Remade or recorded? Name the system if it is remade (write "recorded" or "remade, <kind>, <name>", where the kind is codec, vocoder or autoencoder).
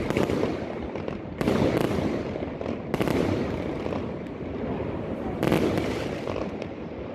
recorded